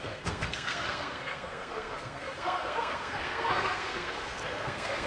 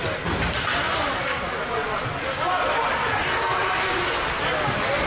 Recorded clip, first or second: second